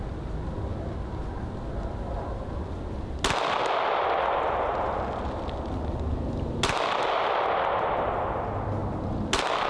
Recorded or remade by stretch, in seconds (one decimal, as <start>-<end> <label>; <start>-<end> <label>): 0.0-9.7 recorded